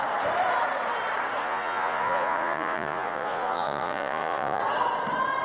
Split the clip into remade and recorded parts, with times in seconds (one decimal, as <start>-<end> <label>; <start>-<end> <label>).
0.0-1.4 recorded; 1.4-4.6 remade; 4.6-5.4 recorded